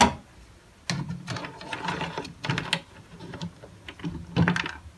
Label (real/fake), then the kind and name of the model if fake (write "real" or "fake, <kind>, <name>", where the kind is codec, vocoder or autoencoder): real